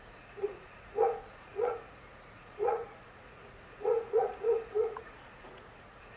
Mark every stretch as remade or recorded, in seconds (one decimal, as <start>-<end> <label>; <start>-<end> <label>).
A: 0.0-6.2 remade